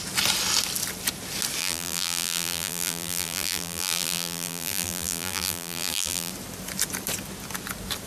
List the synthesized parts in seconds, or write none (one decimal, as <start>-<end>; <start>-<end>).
1.6-6.3